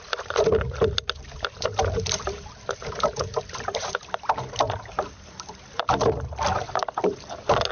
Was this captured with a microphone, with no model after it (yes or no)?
yes